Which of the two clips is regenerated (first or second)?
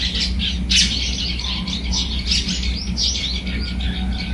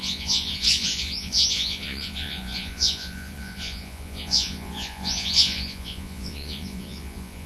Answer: second